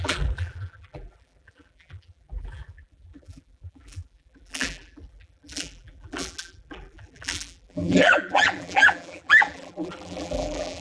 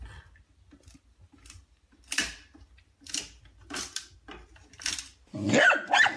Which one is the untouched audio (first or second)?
second